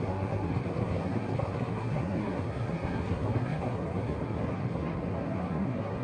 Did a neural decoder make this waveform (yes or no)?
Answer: yes